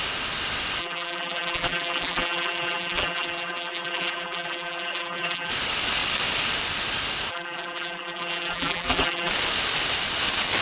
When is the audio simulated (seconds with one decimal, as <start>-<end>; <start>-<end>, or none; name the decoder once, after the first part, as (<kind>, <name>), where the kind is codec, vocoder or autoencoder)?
0.8-5.5 (vocoder, BigVGAN v2); 7.3-9.3